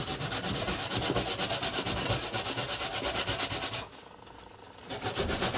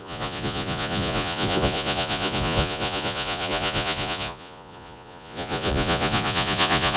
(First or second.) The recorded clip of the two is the first